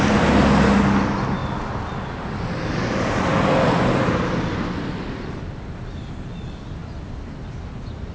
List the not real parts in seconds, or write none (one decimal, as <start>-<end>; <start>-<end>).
none